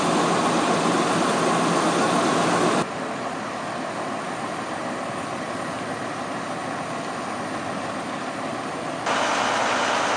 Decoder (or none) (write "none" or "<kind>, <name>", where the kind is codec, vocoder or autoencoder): none